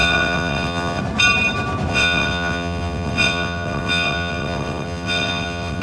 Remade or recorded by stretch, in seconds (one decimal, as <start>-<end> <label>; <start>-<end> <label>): 0.0-1.0 remade; 1.0-1.9 recorded; 1.9-5.8 remade